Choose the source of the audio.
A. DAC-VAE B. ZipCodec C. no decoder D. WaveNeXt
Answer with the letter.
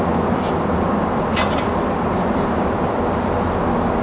C